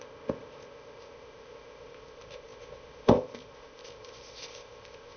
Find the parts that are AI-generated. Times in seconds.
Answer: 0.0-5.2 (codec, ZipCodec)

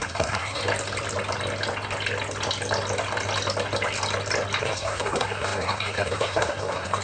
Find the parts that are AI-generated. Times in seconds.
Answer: 0.0-0.6 (codec, SNAC); 4.6-7.0

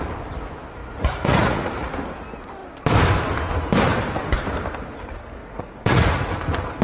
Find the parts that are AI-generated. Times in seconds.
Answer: 0.8-1.9 (vocoder, Vocos); 5.4-6.2

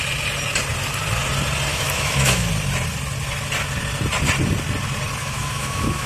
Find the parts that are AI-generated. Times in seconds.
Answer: 1.7-2.5 (autoencoder, DAC-VAE); 5.2-6.1

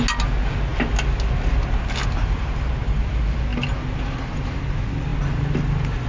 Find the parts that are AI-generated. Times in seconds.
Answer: none

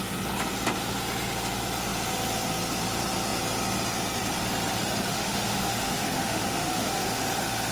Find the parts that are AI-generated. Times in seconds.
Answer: 5.1-7.2 (autoencoder, DAC-VAE)

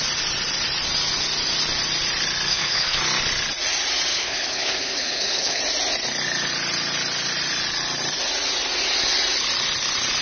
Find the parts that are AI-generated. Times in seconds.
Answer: 2.5-3.0 (codec, HILCodec); 4.1-5.6